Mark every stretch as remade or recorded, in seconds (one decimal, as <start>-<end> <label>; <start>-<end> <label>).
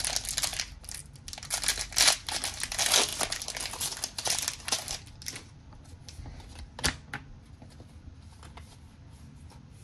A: 0.0-9.8 recorded